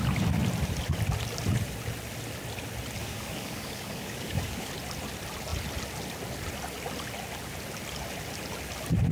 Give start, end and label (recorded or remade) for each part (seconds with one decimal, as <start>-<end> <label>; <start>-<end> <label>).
0.0-3.0 recorded; 3.0-4.7 remade; 4.7-9.1 recorded